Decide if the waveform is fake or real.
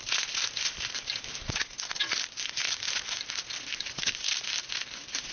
real